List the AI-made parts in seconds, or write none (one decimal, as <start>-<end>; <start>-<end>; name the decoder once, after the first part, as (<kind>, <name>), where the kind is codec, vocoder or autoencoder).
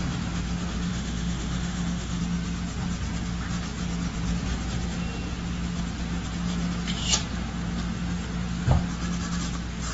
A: 0.9-2.2 (autoencoder, DAC-VAE)